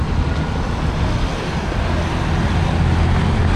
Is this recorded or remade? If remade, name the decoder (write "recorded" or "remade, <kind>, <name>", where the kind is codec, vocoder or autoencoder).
recorded